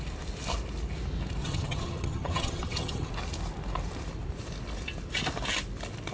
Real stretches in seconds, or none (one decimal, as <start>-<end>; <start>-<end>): 0.0-1.4; 3.1-6.1